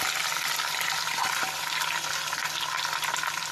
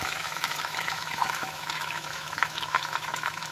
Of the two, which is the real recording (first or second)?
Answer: first